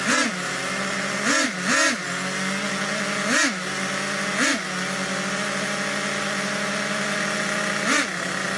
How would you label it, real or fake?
real